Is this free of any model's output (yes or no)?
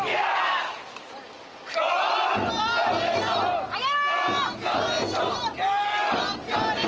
yes